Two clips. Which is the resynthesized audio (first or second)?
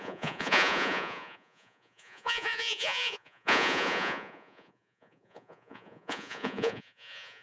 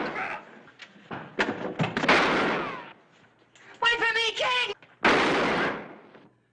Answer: first